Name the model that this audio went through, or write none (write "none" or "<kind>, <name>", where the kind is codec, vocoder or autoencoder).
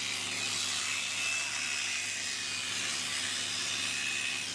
none